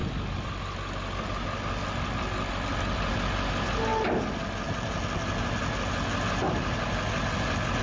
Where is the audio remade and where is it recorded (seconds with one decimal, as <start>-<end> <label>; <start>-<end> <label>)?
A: 0.0-7.8 recorded